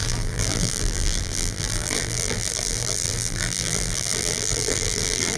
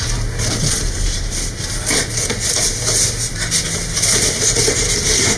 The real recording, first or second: second